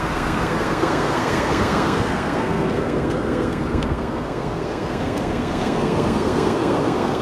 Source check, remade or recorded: remade